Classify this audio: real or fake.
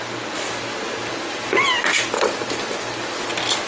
real